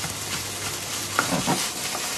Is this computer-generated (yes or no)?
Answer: yes